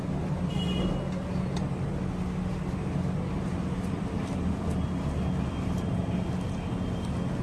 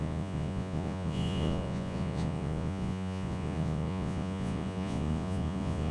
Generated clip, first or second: second